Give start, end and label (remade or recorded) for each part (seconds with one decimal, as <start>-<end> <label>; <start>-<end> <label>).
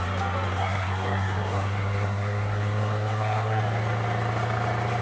0.0-0.6 recorded; 0.6-3.6 remade; 3.6-5.0 recorded